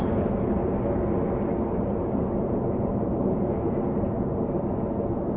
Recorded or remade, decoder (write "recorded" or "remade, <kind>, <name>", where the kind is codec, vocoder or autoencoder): recorded